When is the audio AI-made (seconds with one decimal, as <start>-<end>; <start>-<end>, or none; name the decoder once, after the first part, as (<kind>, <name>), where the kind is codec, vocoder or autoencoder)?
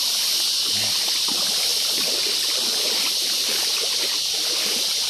none